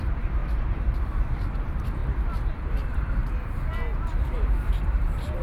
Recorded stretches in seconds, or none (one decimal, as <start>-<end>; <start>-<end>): 0.4-1.0; 2.0-2.5; 3.2-4.1